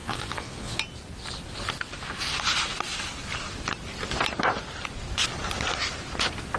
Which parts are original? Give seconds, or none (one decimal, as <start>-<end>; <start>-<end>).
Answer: 0.8-6.6